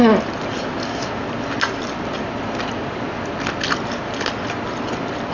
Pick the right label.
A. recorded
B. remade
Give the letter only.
A